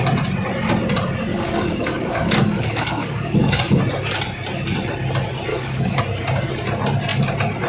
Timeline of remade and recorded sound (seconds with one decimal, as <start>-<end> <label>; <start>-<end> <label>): 0.0-1.3 recorded; 1.3-3.8 remade; 3.8-5.5 recorded; 5.5-6.0 remade; 6.0-7.7 recorded